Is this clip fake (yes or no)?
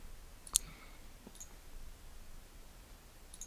no